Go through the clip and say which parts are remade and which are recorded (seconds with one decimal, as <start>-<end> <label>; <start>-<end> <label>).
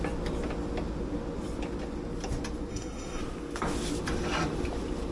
0.0-2.7 recorded; 2.7-3.2 remade; 3.2-5.1 recorded